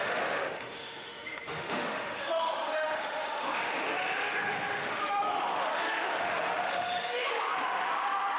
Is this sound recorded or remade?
remade